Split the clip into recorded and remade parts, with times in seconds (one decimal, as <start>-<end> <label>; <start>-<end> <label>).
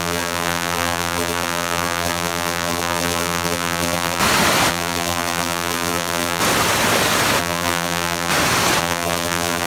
0.0-4.2 remade; 4.2-4.7 recorded; 4.7-6.4 remade; 6.4-7.4 recorded; 7.4-8.3 remade; 8.3-8.8 recorded; 8.8-9.7 remade